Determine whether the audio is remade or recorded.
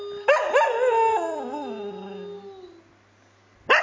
recorded